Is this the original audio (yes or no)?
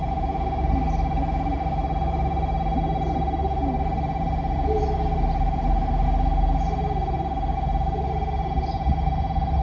yes